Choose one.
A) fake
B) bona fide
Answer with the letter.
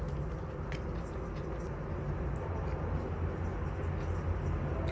B